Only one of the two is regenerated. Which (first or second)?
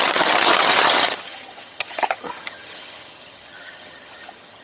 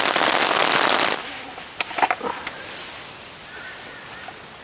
first